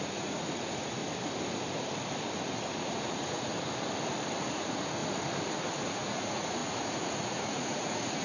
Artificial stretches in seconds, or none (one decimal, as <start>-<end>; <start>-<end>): 0.0-1.0; 2.7-3.5; 4.4-5.0; 5.6-8.2